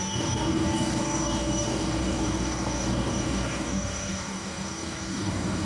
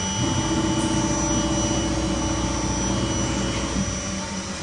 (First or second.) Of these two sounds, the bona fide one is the second